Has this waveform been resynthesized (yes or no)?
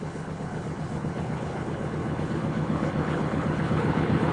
yes